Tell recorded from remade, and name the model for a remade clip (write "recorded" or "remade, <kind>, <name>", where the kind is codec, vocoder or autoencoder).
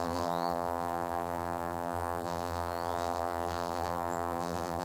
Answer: remade, vocoder, BigVGAN v2